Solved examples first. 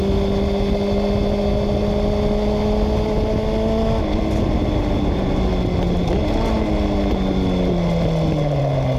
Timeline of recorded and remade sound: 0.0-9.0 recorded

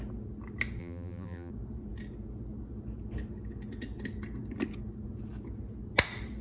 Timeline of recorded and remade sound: 0.0-0.8 recorded; 0.8-1.5 remade; 1.5-6.4 recorded

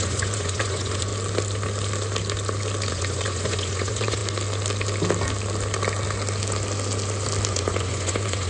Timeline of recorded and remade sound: 0.0-1.1 remade; 1.1-2.9 recorded; 2.9-4.2 remade; 4.2-7.5 recorded; 7.5-8.5 remade

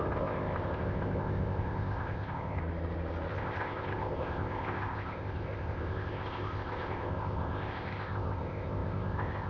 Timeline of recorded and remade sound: 0.0-2.6 remade; 2.6-3.3 recorded; 3.3-9.5 remade

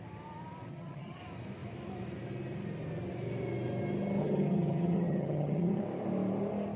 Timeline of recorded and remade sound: 0.0-0.7 recorded; 0.7-1.2 remade; 1.2-4.2 recorded; 4.2-5.8 remade; 5.8-6.8 recorded

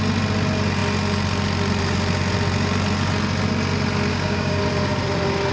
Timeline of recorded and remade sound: 0.0-4.1 recorded; 4.1-4.6 remade; 4.6-5.5 recorded

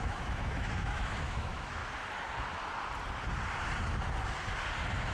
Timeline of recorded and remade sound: 0.0-1.8 remade; 1.8-5.1 recorded